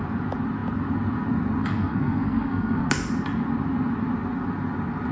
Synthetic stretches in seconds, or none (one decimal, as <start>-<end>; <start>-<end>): 1.6-2.9

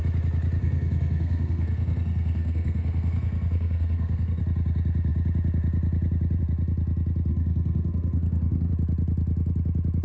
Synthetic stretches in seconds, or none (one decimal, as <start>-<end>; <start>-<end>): 0.6-4.4; 7.3-8.7